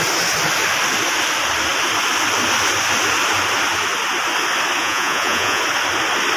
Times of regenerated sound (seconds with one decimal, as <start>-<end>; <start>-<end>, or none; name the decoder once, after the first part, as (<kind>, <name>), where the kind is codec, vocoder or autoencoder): 4.8-5.6 (vocoder, Vocos)